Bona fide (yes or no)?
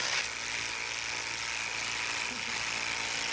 yes